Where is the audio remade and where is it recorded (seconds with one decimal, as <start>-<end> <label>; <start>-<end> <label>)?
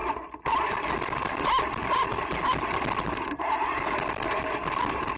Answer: 0.0-5.2 recorded